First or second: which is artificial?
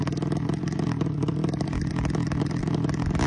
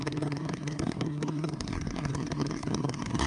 second